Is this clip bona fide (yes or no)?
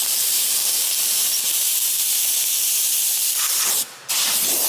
no